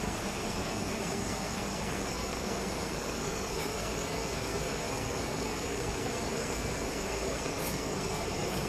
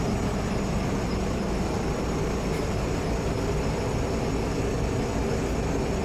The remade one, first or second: first